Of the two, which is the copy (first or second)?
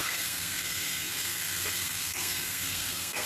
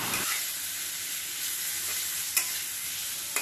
first